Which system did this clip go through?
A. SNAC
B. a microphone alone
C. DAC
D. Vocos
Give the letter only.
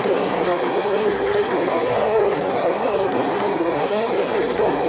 A